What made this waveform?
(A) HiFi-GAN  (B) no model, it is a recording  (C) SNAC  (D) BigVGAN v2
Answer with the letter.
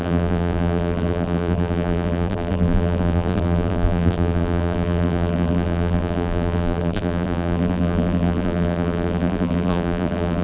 D